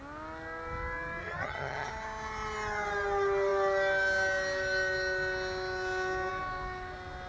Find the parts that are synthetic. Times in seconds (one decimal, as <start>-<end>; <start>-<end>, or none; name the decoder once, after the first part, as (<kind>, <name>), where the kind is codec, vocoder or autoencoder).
1.2-1.9 (vocoder, HiFi-GAN)